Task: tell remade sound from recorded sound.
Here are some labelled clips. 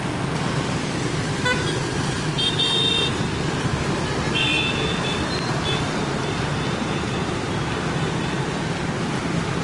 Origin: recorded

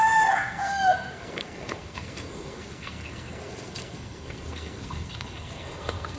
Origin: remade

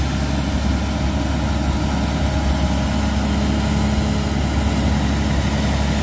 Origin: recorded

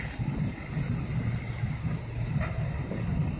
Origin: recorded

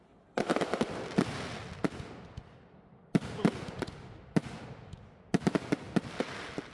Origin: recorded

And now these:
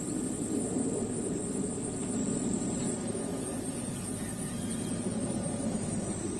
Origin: remade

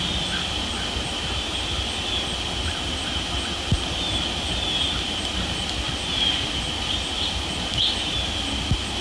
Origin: recorded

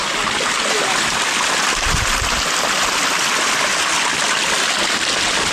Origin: recorded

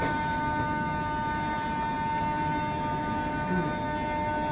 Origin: recorded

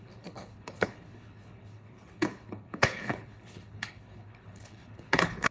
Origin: remade